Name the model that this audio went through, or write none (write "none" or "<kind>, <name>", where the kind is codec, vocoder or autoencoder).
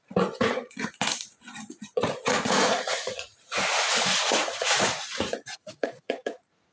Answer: vocoder, Vocos